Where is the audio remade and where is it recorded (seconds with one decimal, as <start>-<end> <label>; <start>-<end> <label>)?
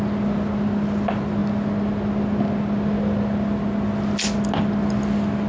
0.0-5.5 recorded